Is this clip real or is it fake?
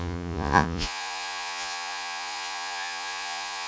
fake